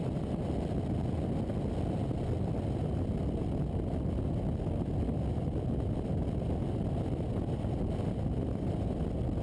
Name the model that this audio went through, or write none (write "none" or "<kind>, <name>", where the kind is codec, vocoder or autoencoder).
none